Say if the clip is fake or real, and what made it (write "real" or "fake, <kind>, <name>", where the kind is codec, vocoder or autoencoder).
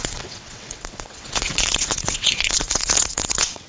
fake, vocoder, WaveNeXt